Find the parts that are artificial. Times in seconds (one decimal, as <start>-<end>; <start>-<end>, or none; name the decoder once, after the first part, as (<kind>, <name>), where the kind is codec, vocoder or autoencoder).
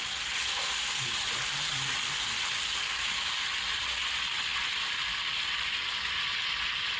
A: none